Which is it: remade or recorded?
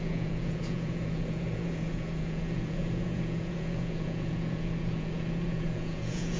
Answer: remade